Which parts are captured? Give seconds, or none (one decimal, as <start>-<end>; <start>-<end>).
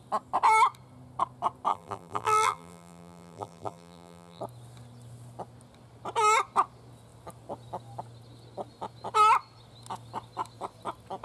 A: 0.0-1.7; 4.4-11.2